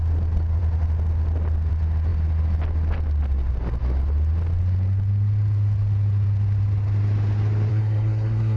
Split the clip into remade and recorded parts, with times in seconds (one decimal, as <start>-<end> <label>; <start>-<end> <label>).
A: 0.0-7.7 recorded; 7.7-8.6 remade